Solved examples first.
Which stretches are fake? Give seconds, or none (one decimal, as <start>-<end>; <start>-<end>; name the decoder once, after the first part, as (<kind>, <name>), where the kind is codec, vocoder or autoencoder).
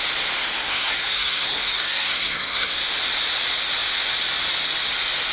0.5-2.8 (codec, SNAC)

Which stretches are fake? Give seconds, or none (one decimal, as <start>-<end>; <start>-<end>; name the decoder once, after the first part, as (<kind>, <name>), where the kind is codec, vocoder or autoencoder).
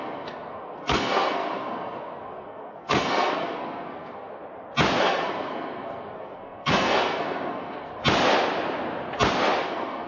0.0-4.4 (codec, SNAC); 5.0-8.0; 9.6-10.1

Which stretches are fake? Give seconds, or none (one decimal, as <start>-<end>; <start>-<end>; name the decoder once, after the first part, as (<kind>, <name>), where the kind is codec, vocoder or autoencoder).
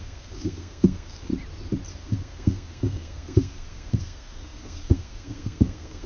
0.0-1.3 (codec, SNAC); 1.9-6.1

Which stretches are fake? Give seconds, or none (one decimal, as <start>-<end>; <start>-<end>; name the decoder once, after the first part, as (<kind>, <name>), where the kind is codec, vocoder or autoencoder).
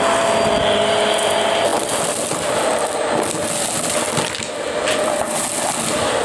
none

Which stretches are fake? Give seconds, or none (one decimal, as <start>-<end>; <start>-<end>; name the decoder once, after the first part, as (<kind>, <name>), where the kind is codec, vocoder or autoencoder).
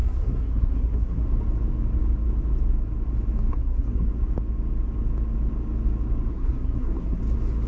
0.0-1.2 (codec, SNAC); 3.5-4.1; 6.3-7.2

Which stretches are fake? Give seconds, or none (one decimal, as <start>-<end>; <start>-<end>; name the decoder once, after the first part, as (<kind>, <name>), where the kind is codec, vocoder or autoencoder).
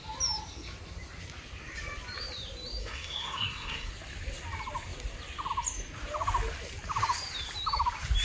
2.8-3.9 (codec, SNAC)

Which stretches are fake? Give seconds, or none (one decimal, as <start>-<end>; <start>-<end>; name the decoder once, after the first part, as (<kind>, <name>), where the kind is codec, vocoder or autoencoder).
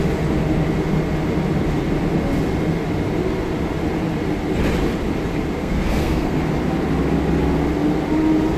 5.6-6.4 (codec, SNAC)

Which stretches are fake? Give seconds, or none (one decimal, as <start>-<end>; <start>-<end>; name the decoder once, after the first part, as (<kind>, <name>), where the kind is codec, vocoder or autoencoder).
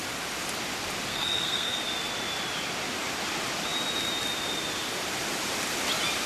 1.1-1.8 (codec, SNAC)